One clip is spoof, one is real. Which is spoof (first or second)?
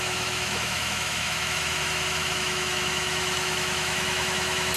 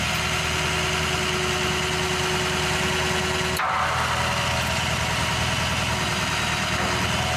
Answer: first